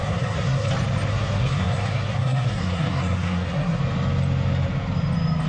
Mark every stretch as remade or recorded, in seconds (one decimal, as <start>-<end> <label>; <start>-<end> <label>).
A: 0.0-0.7 remade; 0.7-1.1 recorded; 1.1-3.8 remade; 3.8-5.5 recorded